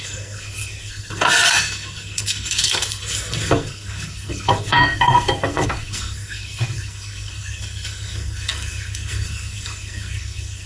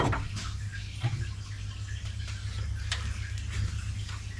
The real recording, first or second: second